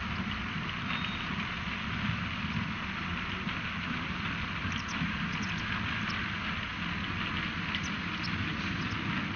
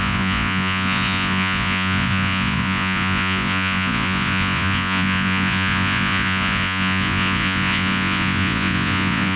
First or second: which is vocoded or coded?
second